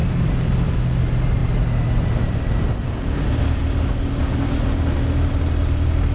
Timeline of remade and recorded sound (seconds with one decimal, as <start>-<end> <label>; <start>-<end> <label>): 0.0-0.8 remade; 0.8-1.4 recorded; 1.4-2.5 remade; 2.5-6.1 recorded